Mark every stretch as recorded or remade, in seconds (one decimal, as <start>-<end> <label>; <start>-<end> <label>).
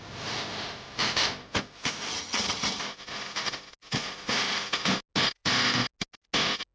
0.0-2.1 recorded; 2.1-2.8 remade; 2.8-6.7 recorded